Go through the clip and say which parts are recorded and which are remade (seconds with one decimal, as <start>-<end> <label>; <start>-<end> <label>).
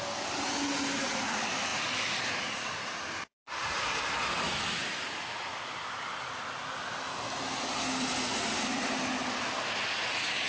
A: 0.0-10.5 recorded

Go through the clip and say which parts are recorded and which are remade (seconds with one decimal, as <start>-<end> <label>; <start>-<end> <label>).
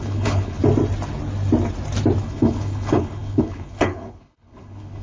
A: 0.0-0.6 remade; 0.6-2.2 recorded; 2.2-5.0 remade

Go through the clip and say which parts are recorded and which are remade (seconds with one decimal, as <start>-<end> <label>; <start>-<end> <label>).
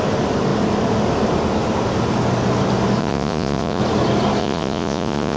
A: 0.0-3.0 recorded; 3.0-3.8 remade; 3.8-4.4 recorded; 4.4-5.4 remade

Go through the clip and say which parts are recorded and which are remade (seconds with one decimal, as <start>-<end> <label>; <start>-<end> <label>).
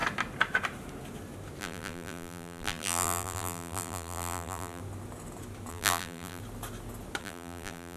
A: 0.0-1.6 recorded; 1.6-4.8 remade; 4.8-5.7 recorded; 5.7-6.4 remade; 6.4-7.2 recorded; 7.2-8.0 remade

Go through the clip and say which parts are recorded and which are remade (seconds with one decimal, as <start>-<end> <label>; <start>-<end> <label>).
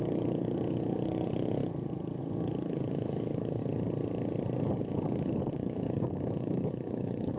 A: 0.0-1.6 remade; 1.6-2.2 recorded; 2.2-3.6 remade; 3.6-4.8 recorded; 4.8-7.4 remade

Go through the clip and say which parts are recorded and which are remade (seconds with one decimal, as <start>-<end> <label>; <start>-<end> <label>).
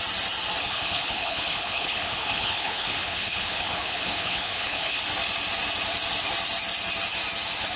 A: 0.0-0.6 recorded; 0.6-5.0 remade; 5.0-7.8 recorded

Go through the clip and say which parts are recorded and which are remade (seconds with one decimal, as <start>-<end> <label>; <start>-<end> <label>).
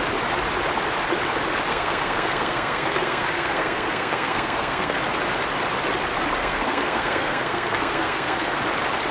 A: 0.0-1.7 recorded; 1.7-5.0 remade; 5.0-6.4 recorded; 6.4-8.6 remade; 8.6-9.1 recorded